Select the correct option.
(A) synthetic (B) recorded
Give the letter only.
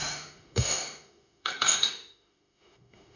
A